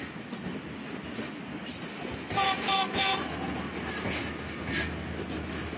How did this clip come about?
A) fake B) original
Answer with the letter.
B